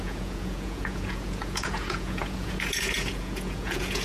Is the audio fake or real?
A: fake